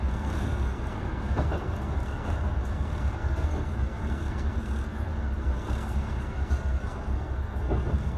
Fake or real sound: fake